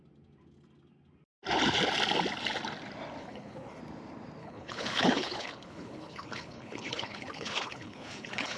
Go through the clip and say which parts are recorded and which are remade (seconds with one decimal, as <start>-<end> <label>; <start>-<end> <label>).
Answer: 0.0-3.2 recorded; 3.2-3.8 remade; 3.8-4.4 recorded; 4.4-8.6 remade